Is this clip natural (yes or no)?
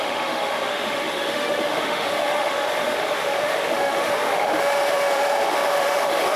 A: no